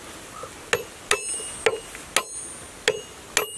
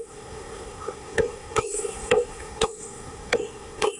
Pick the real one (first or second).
first